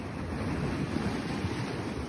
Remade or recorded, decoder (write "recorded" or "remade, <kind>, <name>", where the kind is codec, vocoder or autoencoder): recorded